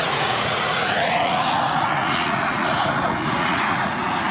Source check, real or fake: fake